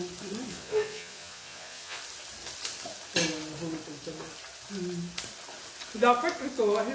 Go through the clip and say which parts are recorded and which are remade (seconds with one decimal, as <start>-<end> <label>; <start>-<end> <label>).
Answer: 0.0-0.5 recorded; 0.5-2.0 remade; 2.0-6.9 recorded

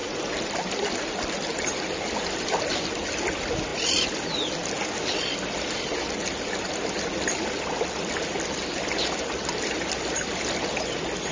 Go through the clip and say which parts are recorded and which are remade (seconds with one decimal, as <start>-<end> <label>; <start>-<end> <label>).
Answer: 0.0-11.3 recorded

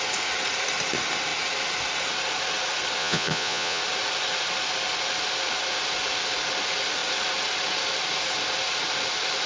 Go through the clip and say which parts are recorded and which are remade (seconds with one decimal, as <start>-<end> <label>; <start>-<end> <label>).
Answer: 0.0-3.0 recorded; 3.0-3.8 remade; 3.8-9.5 recorded

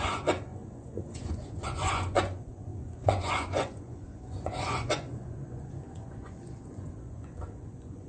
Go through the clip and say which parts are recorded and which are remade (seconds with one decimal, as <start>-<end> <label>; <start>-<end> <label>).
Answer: 0.0-8.1 remade

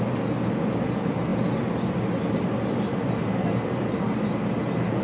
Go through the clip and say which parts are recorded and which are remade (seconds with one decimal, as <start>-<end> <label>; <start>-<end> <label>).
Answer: 0.0-5.0 recorded

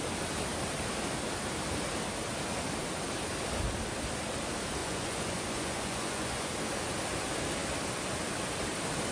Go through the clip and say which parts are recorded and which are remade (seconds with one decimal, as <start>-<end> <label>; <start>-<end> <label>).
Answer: 0.0-4.8 recorded; 4.8-6.5 remade; 6.5-9.1 recorded

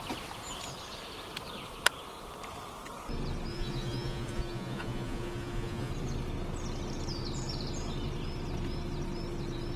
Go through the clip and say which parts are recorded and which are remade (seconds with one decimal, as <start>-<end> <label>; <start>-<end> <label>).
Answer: 0.0-3.5 recorded; 3.5-5.9 remade; 5.9-9.8 recorded

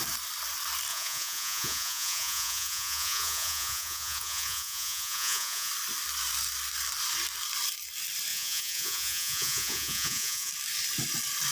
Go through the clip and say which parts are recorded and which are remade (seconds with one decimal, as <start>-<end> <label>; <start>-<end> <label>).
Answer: 0.0-0.9 recorded; 0.9-5.7 remade; 5.7-8.3 recorded; 8.3-10.5 remade; 10.5-11.5 recorded